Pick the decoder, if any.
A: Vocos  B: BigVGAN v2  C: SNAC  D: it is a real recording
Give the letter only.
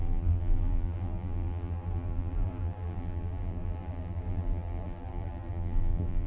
B